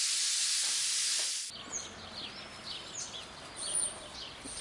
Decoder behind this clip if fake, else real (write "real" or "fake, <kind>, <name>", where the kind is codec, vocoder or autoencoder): real